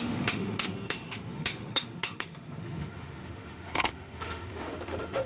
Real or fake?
fake